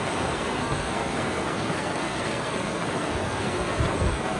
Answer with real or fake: fake